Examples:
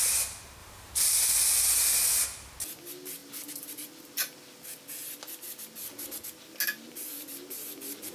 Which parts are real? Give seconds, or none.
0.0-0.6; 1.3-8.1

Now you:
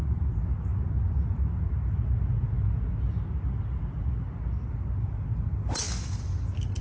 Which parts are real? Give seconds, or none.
0.0-6.8

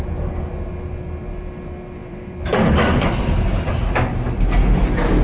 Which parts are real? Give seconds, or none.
0.0-2.0; 3.6-5.2

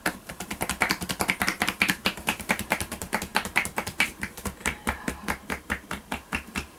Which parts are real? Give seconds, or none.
none

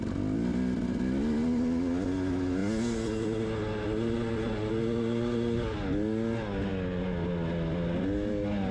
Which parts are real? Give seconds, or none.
0.0-8.7

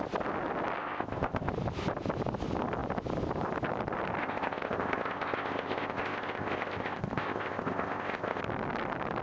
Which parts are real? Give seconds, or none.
0.0-0.8; 1.5-4.2; 8.4-9.2

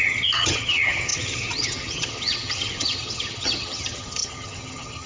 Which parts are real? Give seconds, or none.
none